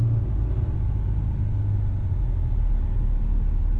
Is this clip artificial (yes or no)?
no